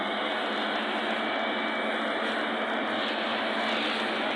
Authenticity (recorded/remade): recorded